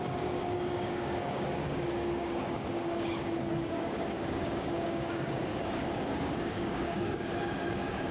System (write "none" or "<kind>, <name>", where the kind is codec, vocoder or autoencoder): codec, DAC